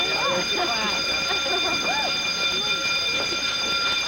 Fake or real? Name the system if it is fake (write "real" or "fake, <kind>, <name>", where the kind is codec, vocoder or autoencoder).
real